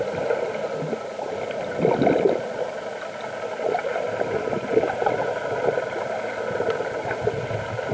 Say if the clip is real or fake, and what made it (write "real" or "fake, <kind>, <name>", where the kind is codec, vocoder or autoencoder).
real